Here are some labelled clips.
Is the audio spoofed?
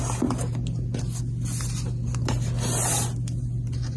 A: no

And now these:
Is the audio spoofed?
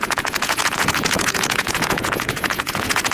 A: yes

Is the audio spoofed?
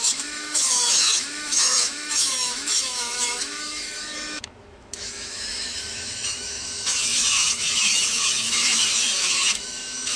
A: yes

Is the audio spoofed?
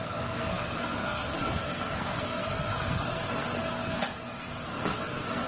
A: yes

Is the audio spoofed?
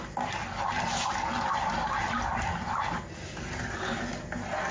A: no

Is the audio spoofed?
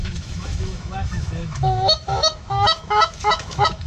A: yes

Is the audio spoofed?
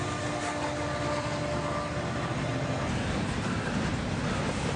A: no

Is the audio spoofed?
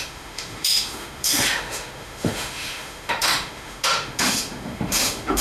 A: yes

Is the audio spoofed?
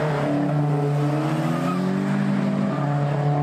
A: no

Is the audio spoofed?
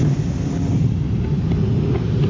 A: no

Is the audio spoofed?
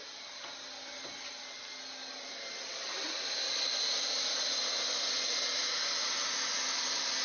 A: no